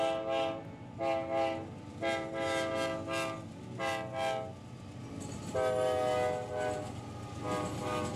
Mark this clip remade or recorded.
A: recorded